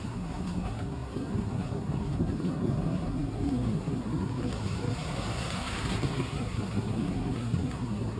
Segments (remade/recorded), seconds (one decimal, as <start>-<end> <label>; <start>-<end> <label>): 0.0-8.2 remade